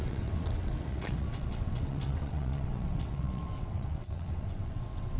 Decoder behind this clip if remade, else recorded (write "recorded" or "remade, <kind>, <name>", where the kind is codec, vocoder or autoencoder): remade, vocoder, WaveNeXt